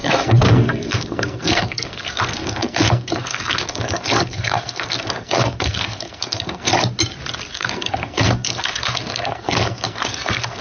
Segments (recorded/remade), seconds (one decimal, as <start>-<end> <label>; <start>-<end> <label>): 0.0-6.7 remade; 6.7-7.5 recorded; 7.5-10.6 remade